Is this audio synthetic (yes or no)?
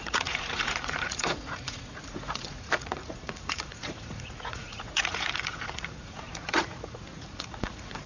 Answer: yes